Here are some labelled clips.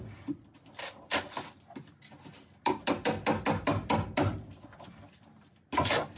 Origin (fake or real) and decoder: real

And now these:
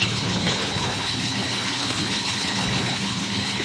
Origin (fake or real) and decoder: fake, codec, HILCodec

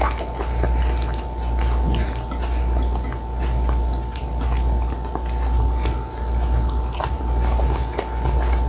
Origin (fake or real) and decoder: real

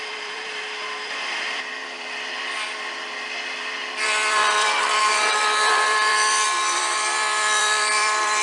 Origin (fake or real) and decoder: fake, vocoder, BigVGAN v2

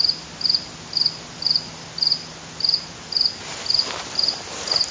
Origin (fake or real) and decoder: real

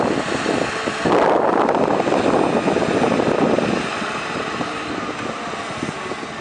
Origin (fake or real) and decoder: real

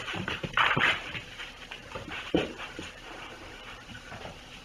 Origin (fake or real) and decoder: fake, vocoder, BigVGAN v2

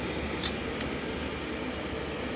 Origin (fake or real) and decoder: real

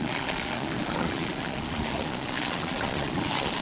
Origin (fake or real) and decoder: fake, vocoder, Vocos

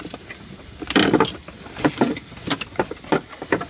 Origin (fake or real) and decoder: real